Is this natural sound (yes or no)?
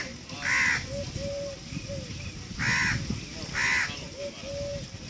no